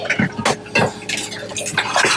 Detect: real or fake real